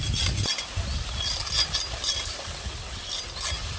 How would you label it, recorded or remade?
recorded